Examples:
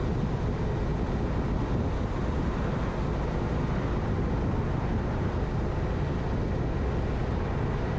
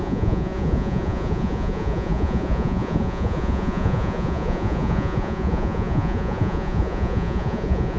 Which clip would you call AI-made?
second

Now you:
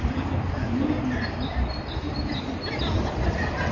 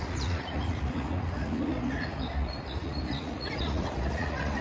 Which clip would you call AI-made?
second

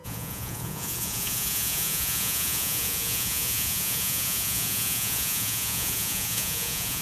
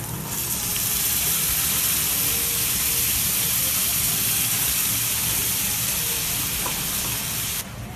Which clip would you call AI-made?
first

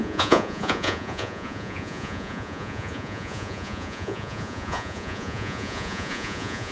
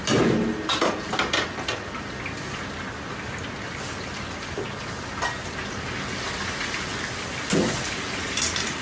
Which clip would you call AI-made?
first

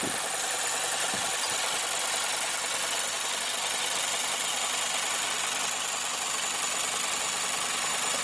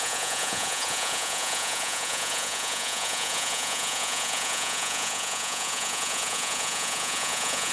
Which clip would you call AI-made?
second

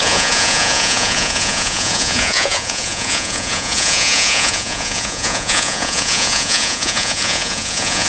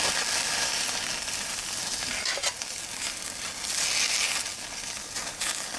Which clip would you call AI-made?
first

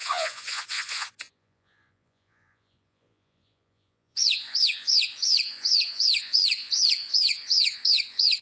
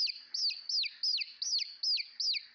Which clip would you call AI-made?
first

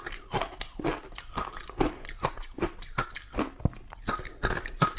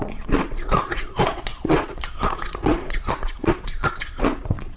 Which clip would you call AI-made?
second